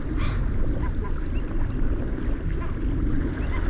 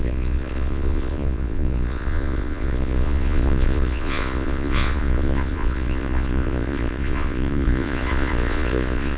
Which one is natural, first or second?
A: first